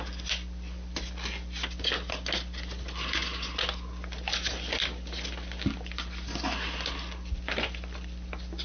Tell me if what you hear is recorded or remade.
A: recorded